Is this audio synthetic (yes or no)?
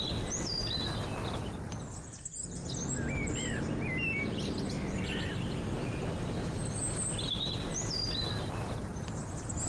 no